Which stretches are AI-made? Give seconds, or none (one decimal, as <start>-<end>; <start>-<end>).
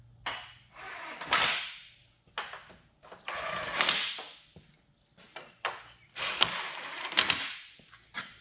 none